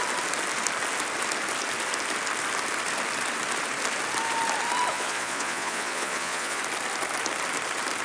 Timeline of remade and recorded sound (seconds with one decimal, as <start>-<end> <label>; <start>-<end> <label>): 0.0-4.9 recorded; 4.9-6.6 remade; 6.6-8.0 recorded